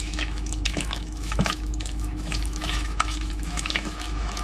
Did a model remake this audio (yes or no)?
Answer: yes